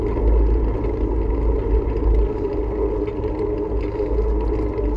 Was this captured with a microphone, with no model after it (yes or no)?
yes